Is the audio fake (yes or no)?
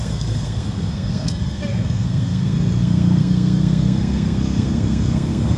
yes